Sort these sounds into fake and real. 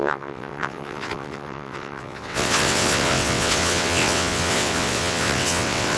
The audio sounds fake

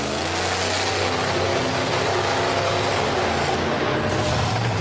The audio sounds real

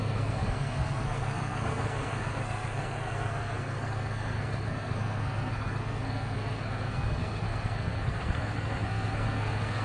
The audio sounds fake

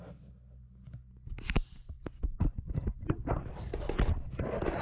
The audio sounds real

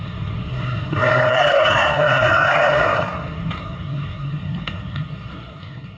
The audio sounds fake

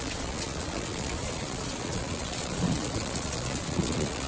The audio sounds fake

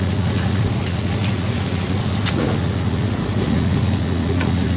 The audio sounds fake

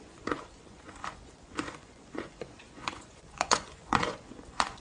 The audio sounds fake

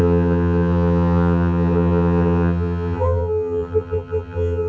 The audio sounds fake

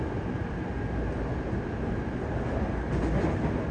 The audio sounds real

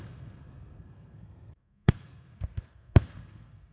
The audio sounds fake